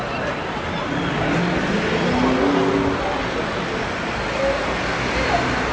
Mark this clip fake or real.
real